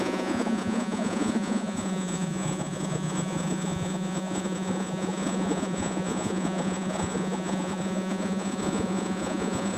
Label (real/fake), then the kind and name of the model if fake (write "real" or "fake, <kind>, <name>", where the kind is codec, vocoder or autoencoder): fake, vocoder, Vocos